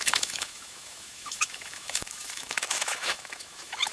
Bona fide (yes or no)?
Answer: no